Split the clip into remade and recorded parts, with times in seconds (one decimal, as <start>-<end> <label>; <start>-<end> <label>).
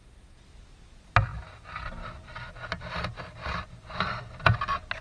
0.0-5.0 recorded